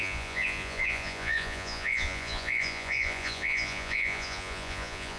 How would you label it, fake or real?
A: fake